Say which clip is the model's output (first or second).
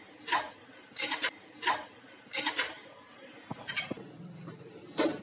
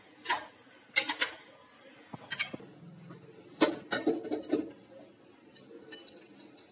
first